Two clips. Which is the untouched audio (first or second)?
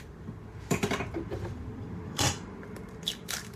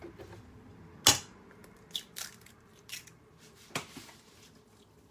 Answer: second